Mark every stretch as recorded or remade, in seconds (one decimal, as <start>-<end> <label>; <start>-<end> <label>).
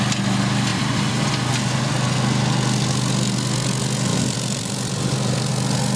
0.0-0.7 recorded; 0.7-1.9 remade; 1.9-4.1 recorded; 4.1-5.5 remade; 5.5-6.0 recorded